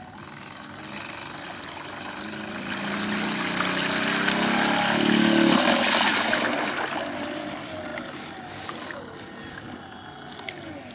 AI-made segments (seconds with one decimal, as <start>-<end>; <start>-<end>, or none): none